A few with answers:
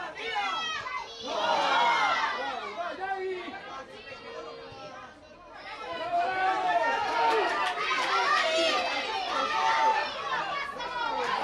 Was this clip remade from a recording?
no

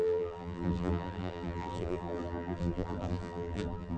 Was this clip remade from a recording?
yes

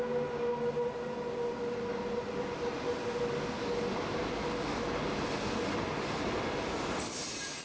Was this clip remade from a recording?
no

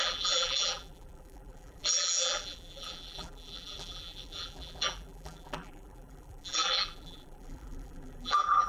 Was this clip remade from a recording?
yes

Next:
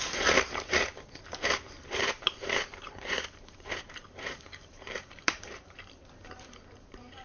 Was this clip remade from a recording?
yes